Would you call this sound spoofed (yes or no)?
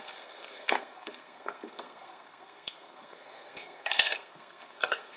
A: yes